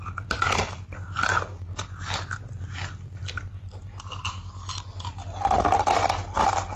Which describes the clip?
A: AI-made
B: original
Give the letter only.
B